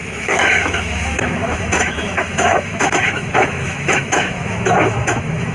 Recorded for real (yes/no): no